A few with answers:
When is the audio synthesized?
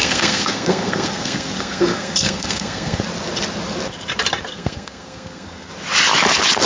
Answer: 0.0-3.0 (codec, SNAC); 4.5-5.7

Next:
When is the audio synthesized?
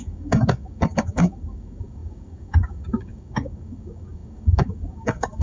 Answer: 0.0-5.4 (codec, DAC)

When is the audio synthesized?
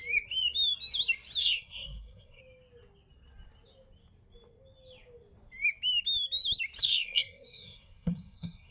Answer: 1.4-2.4 (codec, SNAC); 6.8-8.7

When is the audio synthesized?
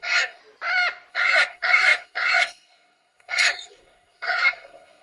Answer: 0.0-0.4 (codec, SNAC); 1.1-5.0